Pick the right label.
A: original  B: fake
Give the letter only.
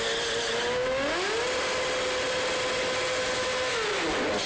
A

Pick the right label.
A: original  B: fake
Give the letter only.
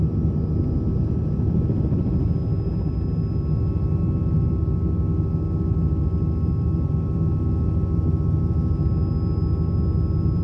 A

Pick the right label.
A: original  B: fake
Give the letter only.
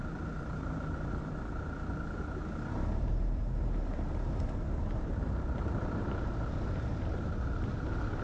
B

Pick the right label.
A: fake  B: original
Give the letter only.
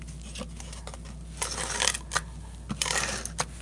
B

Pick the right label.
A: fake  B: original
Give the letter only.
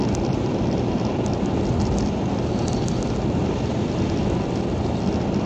B